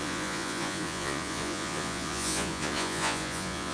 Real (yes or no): no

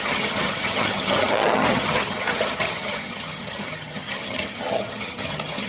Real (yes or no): no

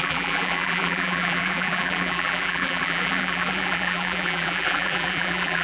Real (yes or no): no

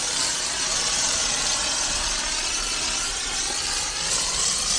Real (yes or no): no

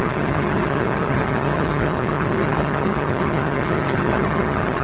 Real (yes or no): no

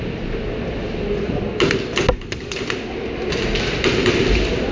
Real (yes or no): yes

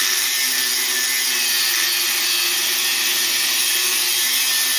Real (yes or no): yes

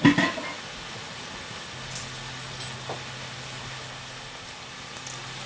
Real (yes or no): yes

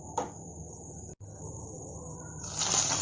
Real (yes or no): yes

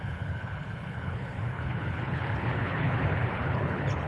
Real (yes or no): no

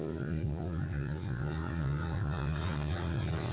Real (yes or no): no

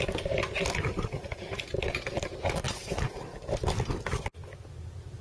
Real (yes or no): yes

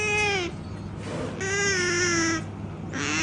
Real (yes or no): yes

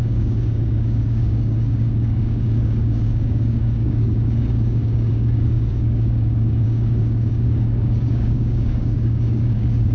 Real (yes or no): no